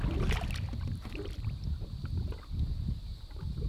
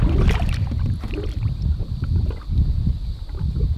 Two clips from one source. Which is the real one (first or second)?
first